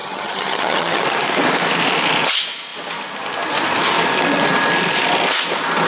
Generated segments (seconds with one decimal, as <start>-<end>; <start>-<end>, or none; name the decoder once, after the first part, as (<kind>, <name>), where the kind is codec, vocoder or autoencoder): 0.0-1.0 (vocoder, HiFi-GAN)